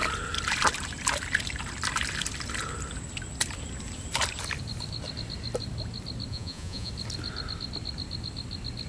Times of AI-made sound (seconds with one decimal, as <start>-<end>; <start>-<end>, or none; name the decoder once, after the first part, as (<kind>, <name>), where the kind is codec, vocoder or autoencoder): 6.3-6.9 (vocoder, Vocos)